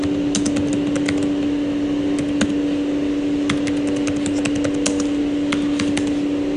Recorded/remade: recorded